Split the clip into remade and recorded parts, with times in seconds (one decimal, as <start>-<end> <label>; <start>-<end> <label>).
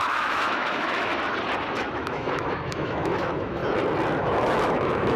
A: 0.0-1.1 remade; 1.1-1.7 recorded; 1.7-3.6 remade; 3.6-4.2 recorded; 4.2-5.2 remade